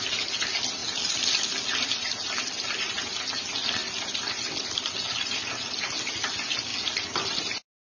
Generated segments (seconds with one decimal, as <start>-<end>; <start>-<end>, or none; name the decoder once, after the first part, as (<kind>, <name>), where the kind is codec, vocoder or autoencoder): none